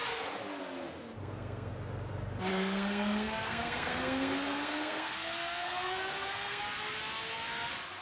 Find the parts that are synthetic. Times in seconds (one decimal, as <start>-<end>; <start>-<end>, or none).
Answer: 1.2-1.7; 2.5-6.6

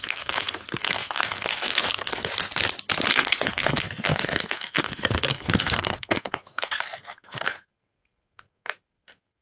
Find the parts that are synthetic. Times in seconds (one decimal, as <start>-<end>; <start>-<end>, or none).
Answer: 0.0-2.3; 3.1-9.4

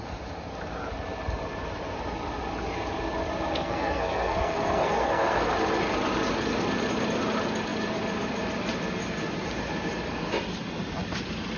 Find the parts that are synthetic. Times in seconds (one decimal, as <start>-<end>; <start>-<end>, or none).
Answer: 3.5-5.5

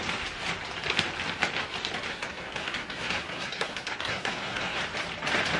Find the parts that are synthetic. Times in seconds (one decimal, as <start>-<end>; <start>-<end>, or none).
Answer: 2.1-4.8

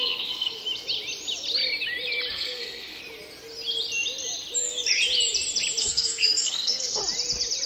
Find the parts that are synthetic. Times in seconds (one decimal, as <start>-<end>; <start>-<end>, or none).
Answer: 0.0-0.6; 2.3-3.0; 5.8-7.0

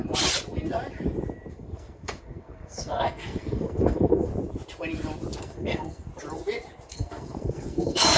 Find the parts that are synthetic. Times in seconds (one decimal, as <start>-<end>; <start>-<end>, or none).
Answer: 1.5-4.3; 5.4-6.1; 6.9-8.2